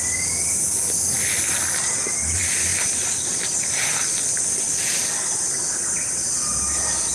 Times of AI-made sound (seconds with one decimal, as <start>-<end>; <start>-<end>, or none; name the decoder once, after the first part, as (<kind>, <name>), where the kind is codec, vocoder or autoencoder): none

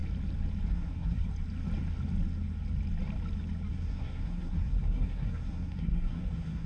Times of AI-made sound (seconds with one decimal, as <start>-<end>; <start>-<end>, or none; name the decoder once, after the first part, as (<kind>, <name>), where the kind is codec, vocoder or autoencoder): 0.7-1.3 (codec, SNAC); 3.7-6.7

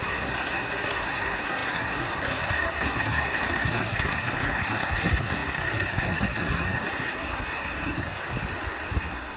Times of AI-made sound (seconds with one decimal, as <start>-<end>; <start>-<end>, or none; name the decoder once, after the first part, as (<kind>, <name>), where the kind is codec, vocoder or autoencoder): 0.0-8.2 (codec, SNAC); 8.9-9.4